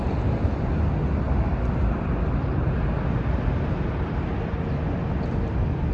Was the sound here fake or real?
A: real